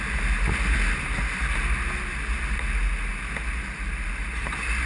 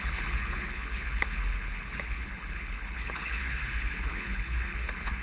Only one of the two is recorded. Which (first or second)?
first